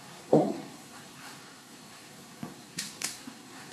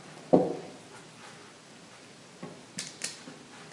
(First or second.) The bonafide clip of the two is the second